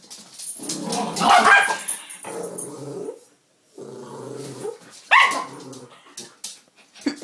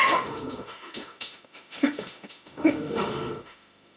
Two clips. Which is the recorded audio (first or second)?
first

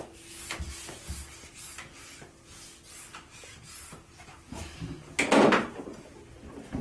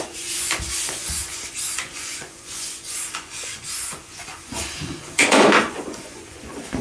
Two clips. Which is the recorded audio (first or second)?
first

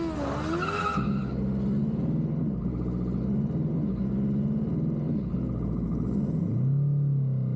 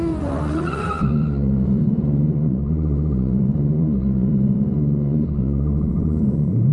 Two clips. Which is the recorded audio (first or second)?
first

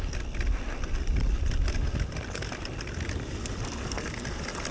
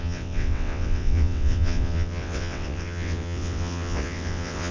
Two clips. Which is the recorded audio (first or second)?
first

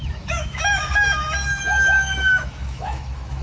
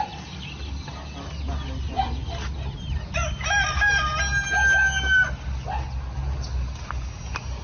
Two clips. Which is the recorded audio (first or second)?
second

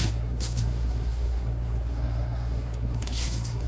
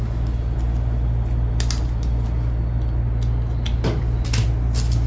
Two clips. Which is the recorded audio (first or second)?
second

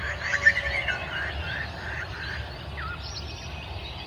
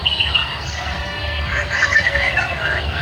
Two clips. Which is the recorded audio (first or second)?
first